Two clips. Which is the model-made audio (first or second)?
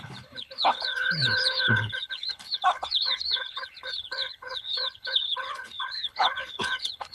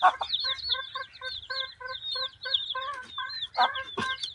first